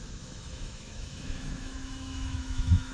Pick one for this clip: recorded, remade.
remade